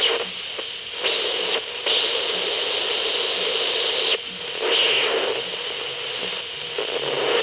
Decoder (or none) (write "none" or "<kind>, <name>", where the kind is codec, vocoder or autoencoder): none